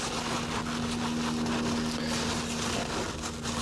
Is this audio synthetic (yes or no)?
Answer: no